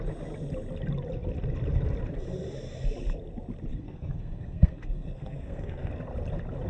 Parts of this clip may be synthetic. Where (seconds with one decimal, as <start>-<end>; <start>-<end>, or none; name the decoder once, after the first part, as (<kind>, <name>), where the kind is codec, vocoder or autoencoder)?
3.7-5.9 (codec, SNAC)